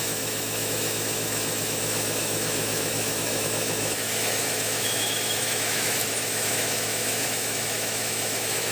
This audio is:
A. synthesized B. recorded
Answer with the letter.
A